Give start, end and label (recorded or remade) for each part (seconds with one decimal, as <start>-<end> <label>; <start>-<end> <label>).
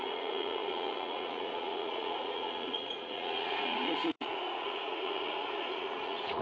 0.0-6.4 remade